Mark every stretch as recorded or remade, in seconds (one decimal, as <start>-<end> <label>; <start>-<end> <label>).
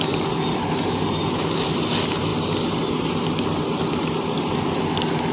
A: 0.0-2.3 recorded; 2.3-5.3 remade